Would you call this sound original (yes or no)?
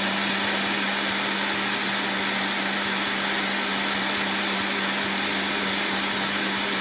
yes